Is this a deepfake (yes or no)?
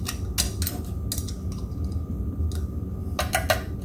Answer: no